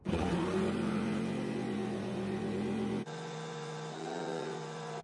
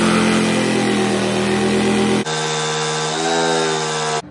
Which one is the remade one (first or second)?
first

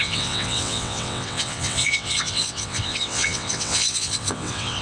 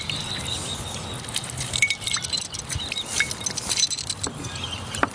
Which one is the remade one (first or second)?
first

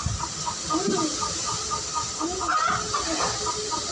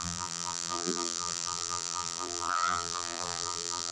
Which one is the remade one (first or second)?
second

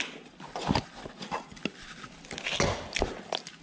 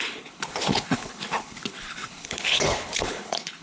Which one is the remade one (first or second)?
second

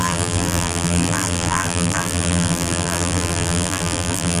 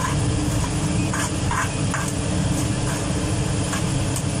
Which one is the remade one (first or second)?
first